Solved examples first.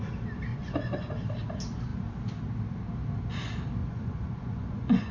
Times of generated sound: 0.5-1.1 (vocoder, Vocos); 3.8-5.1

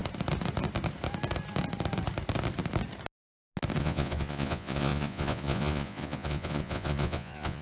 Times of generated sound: 3.8-7.6 (vocoder, Vocos)